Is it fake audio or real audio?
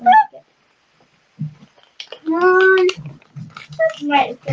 real